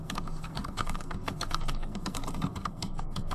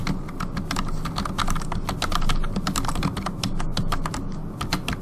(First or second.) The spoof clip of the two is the first